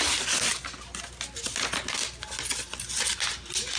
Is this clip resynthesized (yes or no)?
no